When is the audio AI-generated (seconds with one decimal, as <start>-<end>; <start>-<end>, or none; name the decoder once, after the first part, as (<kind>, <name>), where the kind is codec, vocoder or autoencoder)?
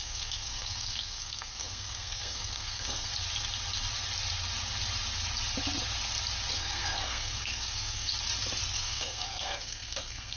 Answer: 0.0-3.1 (codec, SNAC); 6.5-8.1; 8.7-10.4